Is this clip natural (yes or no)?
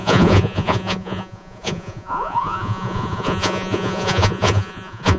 no